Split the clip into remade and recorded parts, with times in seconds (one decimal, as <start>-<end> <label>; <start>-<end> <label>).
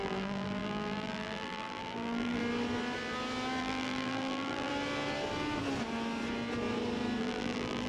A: 0.0-2.4 remade; 2.4-3.6 recorded; 3.6-4.7 remade; 4.7-7.2 recorded; 7.2-7.9 remade